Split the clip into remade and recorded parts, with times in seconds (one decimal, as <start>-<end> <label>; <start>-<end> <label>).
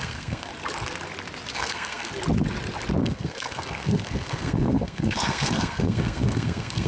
0.0-0.5 remade; 0.5-1.5 recorded; 1.5-2.1 remade; 2.1-3.0 recorded; 3.0-6.9 remade